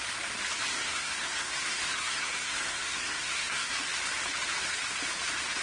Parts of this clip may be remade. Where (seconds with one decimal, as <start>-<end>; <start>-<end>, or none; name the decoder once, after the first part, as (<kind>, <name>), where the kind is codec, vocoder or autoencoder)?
0.7-3.7 (codec, SNAC)